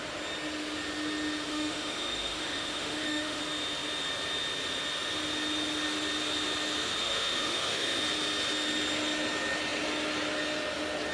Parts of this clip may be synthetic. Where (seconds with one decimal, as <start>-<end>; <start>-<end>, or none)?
1.5-3.4; 7.0-8.0